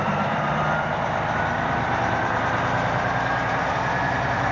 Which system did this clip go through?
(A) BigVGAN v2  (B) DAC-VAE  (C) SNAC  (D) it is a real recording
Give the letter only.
A